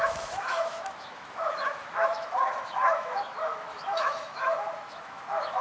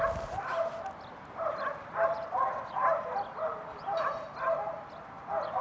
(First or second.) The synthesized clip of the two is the first